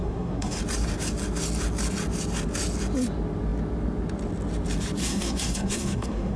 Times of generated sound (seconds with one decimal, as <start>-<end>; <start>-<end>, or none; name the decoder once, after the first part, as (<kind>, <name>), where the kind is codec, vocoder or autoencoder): 0.0-0.6 (codec, SNAC); 5.0-6.4